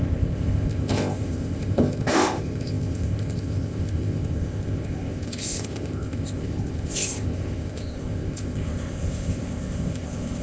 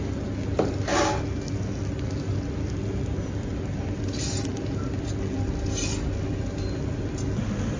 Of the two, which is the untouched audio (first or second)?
second